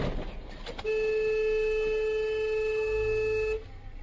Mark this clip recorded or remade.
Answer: recorded